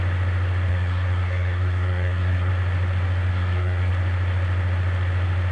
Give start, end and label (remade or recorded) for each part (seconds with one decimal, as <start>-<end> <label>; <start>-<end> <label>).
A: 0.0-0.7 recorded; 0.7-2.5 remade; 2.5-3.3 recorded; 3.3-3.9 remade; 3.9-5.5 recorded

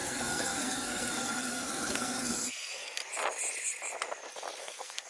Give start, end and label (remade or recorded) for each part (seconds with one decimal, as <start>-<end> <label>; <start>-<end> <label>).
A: 0.0-3.0 remade; 3.0-4.6 recorded; 4.6-5.1 remade

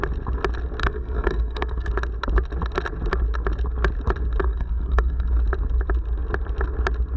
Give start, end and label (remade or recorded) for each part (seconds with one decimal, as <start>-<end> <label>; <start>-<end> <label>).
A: 0.0-0.8 recorded; 0.8-1.9 remade; 1.9-4.4 recorded; 4.4-5.3 remade; 5.3-7.2 recorded

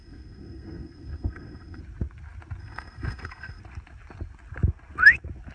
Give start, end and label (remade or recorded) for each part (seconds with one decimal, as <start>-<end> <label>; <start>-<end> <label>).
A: 0.0-1.8 remade; 1.8-2.6 recorded; 2.6-3.6 remade; 3.6-5.5 recorded